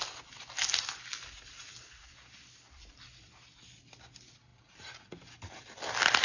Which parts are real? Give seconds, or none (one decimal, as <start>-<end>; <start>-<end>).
0.0-6.2